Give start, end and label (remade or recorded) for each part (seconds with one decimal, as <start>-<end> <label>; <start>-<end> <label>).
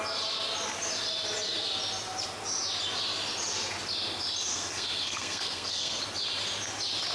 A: 0.0-4.5 recorded; 4.5-6.0 remade; 6.0-7.1 recorded